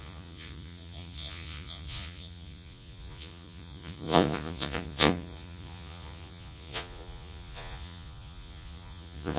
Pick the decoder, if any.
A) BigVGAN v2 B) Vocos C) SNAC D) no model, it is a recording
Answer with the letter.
B